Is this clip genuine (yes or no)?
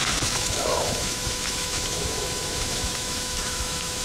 no